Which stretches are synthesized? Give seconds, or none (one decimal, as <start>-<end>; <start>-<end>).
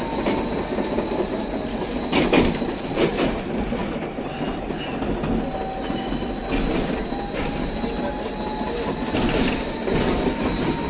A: none